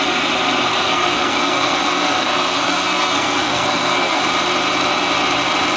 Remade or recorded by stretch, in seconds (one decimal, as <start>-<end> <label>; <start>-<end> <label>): 0.0-0.7 recorded; 0.7-4.2 remade; 4.2-5.8 recorded